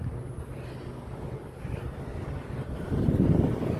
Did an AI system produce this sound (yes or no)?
no